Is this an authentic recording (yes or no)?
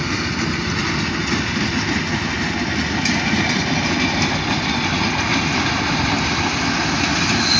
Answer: yes